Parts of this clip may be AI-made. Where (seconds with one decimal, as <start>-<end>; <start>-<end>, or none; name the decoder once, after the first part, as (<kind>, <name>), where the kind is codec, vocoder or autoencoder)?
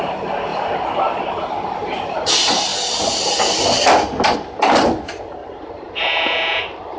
0.5-1.2 (vocoder, BigVGAN v2); 5.4-5.9